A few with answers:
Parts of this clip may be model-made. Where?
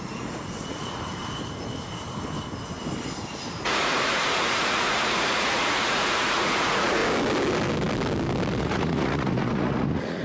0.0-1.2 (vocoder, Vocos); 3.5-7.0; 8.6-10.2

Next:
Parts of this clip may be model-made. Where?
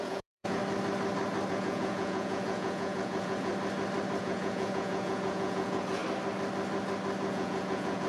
0.0-0.6 (vocoder, Vocos); 1.5-3.5; 4.2-6.0; 7.3-8.1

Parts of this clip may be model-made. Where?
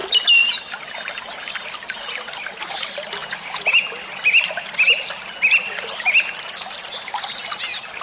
3.2-3.7 (vocoder, Vocos)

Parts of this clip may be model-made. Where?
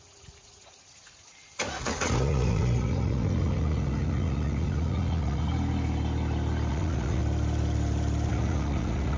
0.0-5.5 (vocoder, Vocos); 6.7-7.2; 8.3-9.2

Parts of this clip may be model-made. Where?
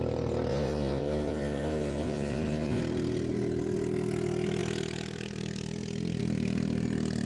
0.5-2.8 (vocoder, Vocos)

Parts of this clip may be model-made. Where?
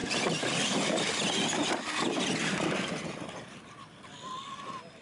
none